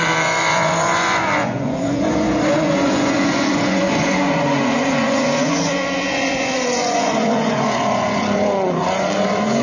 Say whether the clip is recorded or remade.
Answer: remade